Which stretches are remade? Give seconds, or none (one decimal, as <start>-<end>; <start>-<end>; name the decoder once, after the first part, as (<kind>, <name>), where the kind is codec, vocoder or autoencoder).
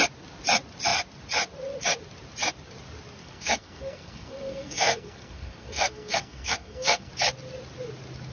3.2-7.1 (codec, SNAC)